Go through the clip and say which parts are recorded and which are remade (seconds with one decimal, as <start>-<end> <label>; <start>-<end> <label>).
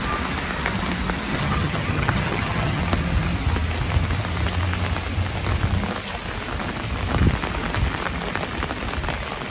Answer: 0.0-1.3 recorded; 1.3-2.8 remade; 2.8-9.5 recorded